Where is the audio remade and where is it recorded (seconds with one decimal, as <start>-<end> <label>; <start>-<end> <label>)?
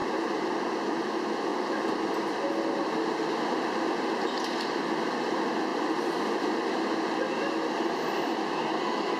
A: 0.0-5.7 recorded; 5.7-6.5 remade; 6.5-9.2 recorded